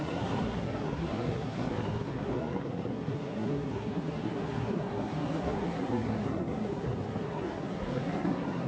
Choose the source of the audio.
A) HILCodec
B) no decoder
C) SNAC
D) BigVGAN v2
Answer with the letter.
C